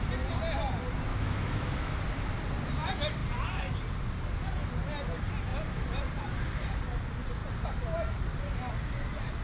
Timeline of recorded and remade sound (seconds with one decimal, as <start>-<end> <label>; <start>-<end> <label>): 0.0-1.1 recorded; 1.1-2.0 remade; 2.0-9.4 recorded

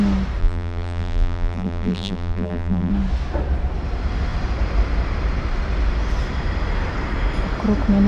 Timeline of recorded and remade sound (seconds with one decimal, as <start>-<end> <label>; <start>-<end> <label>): 0.0-0.4 recorded; 0.4-2.9 remade; 2.9-8.1 recorded

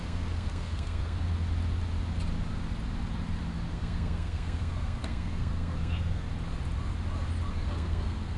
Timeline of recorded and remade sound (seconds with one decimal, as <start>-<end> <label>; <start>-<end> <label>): 0.0-1.3 remade; 1.3-3.7 recorded; 3.7-6.3 remade; 6.3-7.5 recorded; 7.5-8.4 remade

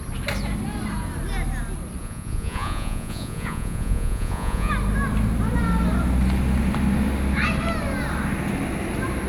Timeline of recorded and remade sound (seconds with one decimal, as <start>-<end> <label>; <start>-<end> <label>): 0.0-2.0 recorded; 2.0-4.7 remade; 4.7-9.3 recorded

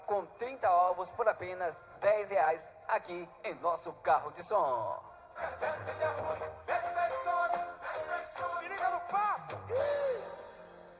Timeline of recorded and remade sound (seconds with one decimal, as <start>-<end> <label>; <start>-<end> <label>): 0.0-0.8 recorded; 0.8-1.3 remade; 1.3-1.9 recorded; 1.9-2.5 remade; 2.5-11.0 recorded

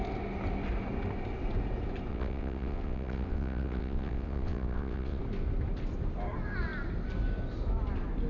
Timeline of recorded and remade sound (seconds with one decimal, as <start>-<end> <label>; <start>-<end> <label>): 0.0-2.1 recorded; 2.1-5.2 remade; 5.2-8.3 recorded

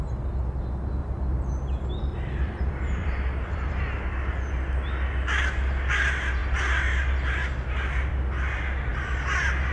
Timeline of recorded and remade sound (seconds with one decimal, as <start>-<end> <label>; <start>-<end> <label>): 0.0-1.0 recorded; 1.0-1.5 remade; 1.5-2.1 recorded; 2.1-4.1 remade; 4.1-9.7 recorded

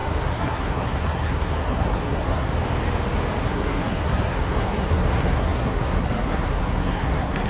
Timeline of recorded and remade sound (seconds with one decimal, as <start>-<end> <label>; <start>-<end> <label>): 0.0-2.5 remade; 2.5-3.4 recorded; 3.4-7.5 remade